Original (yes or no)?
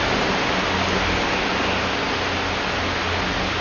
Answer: yes